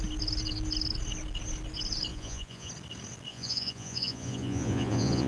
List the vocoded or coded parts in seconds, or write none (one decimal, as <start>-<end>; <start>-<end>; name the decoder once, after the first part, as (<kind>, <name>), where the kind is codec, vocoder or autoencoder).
2.1-2.7 (vocoder, Vocos); 3.3-5.3

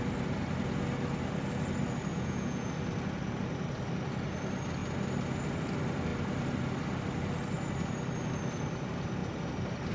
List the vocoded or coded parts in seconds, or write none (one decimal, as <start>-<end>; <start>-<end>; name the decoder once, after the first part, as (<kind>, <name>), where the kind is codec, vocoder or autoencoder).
2.1-2.7 (vocoder, Vocos)

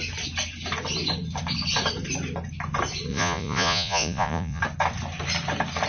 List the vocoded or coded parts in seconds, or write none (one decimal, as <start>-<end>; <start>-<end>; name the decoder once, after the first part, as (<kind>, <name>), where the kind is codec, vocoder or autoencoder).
3.1-4.6 (vocoder, Vocos)

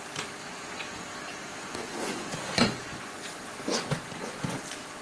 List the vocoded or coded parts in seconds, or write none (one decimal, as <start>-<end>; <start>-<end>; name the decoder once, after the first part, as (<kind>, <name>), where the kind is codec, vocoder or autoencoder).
0.4-1.0 (vocoder, Vocos); 1.6-4.6

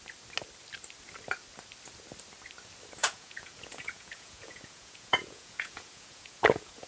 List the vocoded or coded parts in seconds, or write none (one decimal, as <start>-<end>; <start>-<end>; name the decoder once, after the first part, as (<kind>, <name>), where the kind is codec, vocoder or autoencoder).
3.0-6.9 (vocoder, Vocos)